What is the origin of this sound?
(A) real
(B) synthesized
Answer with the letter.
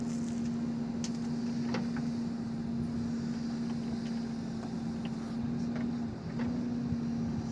A